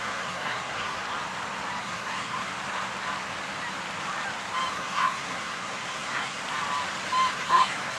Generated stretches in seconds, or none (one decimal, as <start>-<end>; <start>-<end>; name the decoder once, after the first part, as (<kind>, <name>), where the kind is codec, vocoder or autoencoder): 0.0-1.0 (codec, SNAC); 1.8-2.5; 4.7-6.4; 7.3-8.0